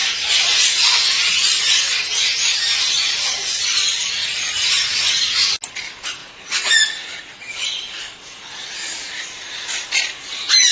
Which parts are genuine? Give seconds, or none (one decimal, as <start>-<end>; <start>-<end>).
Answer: 0.0-6.2; 7.3-10.7